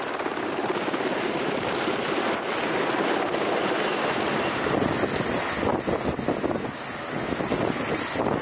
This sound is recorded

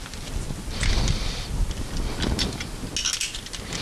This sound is recorded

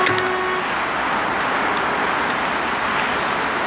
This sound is recorded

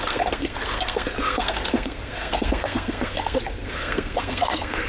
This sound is remade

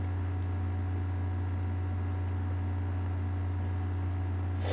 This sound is recorded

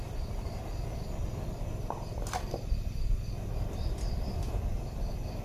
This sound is recorded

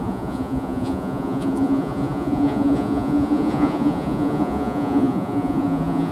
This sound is remade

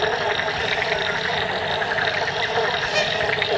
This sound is recorded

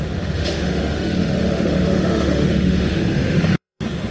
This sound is remade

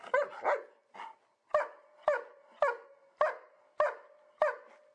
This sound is recorded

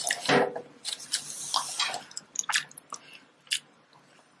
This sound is recorded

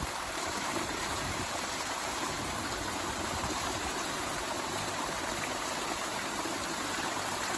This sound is remade